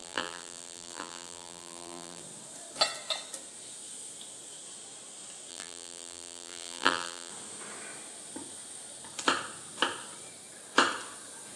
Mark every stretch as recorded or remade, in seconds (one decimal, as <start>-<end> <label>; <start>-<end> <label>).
0.0-2.2 remade; 2.2-5.5 recorded; 5.5-7.3 remade; 7.3-11.6 recorded